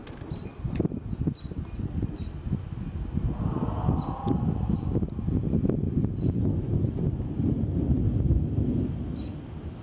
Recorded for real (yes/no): yes